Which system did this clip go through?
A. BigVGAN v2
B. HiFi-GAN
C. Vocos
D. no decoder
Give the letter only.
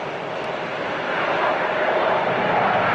D